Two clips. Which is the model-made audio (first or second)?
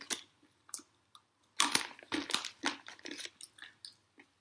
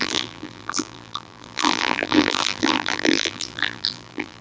second